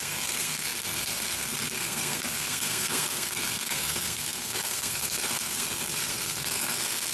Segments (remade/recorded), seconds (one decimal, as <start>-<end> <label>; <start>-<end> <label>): 0.0-7.1 remade